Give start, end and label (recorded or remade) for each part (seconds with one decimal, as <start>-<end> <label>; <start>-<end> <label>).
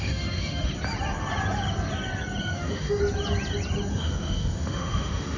0.0-0.7 remade; 0.7-2.4 recorded; 2.4-3.0 remade; 3.0-3.9 recorded; 3.9-5.4 remade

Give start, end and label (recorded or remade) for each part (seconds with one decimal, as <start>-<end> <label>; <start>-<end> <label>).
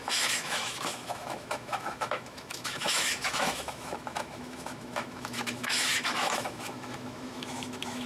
0.0-8.1 remade